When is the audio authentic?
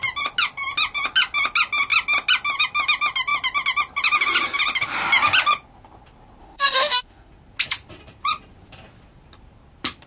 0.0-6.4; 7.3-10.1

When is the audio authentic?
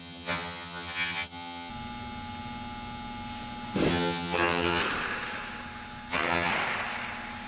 1.7-3.9; 4.8-6.1; 6.5-7.5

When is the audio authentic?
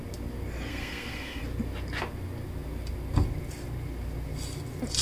0.0-0.7; 1.4-5.0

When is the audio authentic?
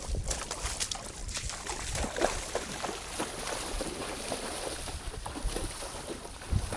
0.0-6.8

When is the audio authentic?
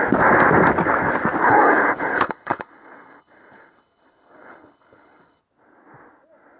0.0-1.4; 5.4-6.6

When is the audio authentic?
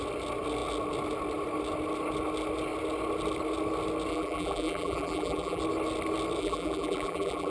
0.0-4.1; 5.6-6.4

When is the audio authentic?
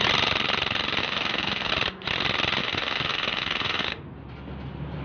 0.0-1.0; 1.7-2.6; 4.0-5.0